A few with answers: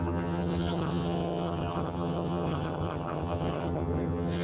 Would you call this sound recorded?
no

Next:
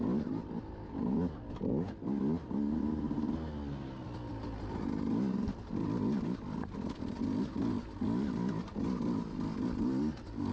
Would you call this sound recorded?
yes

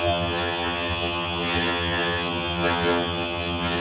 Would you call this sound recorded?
no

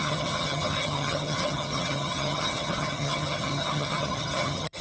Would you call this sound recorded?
no